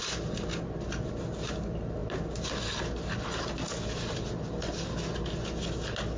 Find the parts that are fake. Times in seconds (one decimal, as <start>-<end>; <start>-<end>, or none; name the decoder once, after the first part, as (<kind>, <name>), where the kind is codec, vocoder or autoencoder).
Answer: none